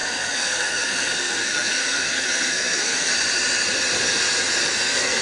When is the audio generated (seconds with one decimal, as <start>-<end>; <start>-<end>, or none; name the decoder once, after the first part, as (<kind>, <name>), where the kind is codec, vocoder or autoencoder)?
0.0-3.1 (codec, SNAC); 4.7-5.2